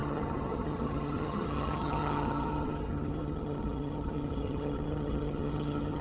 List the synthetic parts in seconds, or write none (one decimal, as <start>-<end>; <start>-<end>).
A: 0.0-6.0